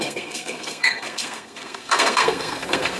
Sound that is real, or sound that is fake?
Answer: fake